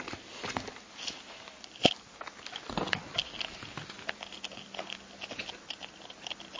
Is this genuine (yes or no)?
yes